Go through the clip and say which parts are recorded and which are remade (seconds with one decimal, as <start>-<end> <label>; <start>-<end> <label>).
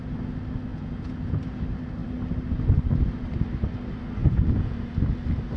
0.0-0.7 recorded; 0.7-1.6 remade; 1.6-4.2 recorded; 4.2-4.9 remade; 4.9-5.6 recorded